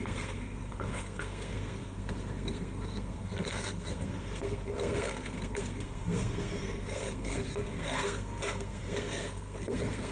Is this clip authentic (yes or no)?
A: no